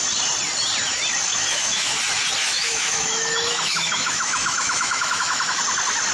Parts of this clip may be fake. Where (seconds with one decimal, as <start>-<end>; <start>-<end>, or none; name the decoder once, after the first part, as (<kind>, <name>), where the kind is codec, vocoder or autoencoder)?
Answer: 1.3-2.0 (autoencoder, DAC-VAE); 2.4-5.6

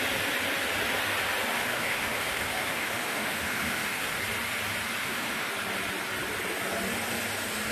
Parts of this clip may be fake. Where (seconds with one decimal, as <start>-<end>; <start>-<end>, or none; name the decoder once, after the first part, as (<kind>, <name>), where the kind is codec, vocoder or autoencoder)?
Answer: 1.6-4.2 (autoencoder, DAC-VAE); 5.0-5.5

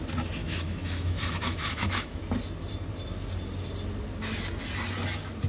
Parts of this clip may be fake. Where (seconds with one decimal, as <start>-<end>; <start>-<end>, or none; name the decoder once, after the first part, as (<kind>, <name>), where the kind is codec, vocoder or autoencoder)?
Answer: 0.4-2.2 (autoencoder, DAC-VAE)